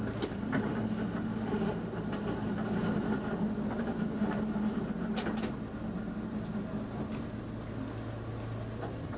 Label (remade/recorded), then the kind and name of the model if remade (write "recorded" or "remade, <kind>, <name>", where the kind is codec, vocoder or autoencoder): recorded